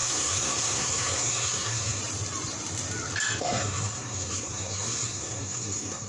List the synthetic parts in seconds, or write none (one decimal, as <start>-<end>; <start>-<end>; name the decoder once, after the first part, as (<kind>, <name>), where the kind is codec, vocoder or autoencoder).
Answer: 0.0-2.0 (codec, SNAC); 3.4-6.1